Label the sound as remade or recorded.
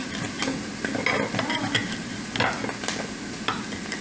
recorded